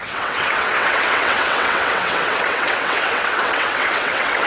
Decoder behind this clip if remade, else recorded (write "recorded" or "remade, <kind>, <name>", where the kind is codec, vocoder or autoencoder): remade, vocoder, WaveNeXt